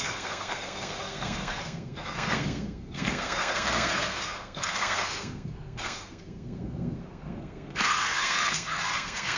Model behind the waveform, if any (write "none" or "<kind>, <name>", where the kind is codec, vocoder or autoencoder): codec, SNAC